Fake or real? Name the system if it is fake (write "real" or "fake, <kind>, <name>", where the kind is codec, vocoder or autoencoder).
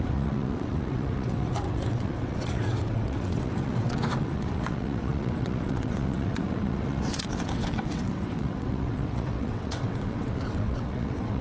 fake, vocoder, WaveNeXt